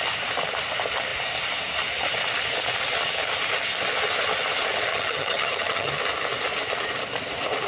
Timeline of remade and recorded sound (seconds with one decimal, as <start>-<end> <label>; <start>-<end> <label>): 0.0-4.9 recorded; 4.9-5.9 remade; 5.9-7.7 recorded